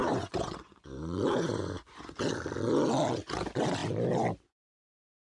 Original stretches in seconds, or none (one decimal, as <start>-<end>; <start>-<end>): 2.2-5.2